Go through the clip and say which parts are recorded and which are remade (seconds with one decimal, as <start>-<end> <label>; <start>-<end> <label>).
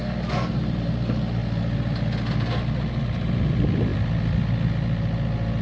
0.0-0.5 remade; 0.5-5.6 recorded